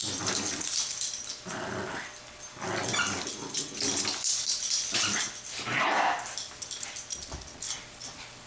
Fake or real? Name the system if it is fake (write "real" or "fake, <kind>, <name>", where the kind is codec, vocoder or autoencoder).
real